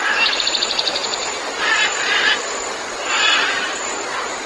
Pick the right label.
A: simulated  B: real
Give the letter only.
A